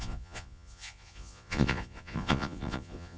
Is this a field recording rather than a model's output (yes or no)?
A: no